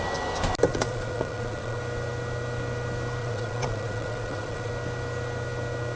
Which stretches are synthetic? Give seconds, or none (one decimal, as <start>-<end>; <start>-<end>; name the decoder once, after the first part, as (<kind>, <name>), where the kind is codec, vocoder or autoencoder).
0.7-1.8 (vocoder, Vocos); 3.2-4.7